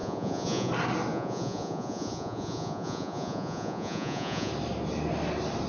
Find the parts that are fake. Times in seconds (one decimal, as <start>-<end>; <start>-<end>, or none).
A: 0.0-0.7; 1.1-4.5